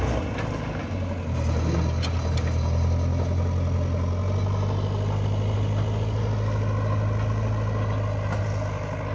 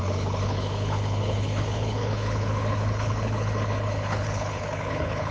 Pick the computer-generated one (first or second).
second